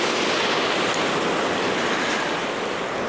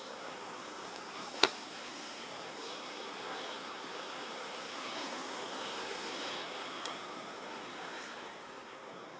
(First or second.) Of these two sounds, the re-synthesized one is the second